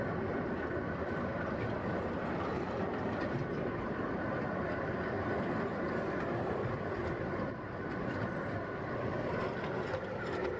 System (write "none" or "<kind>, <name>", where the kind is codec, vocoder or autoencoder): none